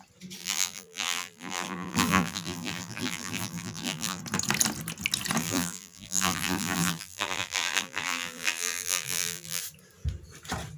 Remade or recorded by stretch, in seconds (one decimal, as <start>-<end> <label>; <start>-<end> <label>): 0.0-0.4 recorded; 0.4-4.2 remade; 4.2-5.4 recorded; 5.4-9.6 remade; 9.6-10.8 recorded